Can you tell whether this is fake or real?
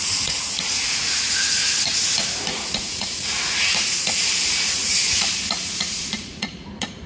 fake